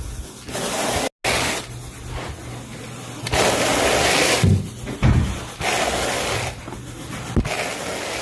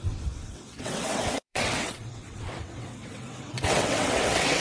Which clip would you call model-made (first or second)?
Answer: second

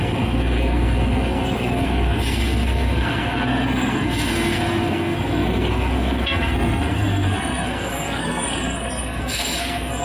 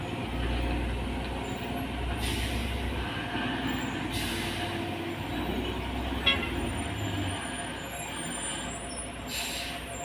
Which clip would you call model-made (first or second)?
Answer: first